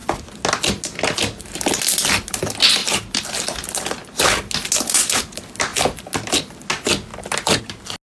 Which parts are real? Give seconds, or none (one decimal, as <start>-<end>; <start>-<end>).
0.0-8.1